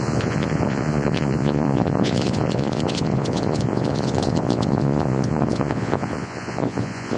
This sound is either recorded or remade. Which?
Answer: remade